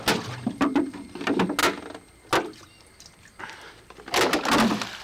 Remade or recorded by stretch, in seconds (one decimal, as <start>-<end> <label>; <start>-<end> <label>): 0.0-5.0 recorded